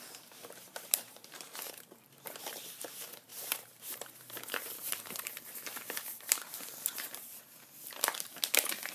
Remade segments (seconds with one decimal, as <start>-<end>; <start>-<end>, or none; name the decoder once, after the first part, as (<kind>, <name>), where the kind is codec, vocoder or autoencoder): 0.0-7.3 (vocoder, BigVGAN v2); 8.2-8.9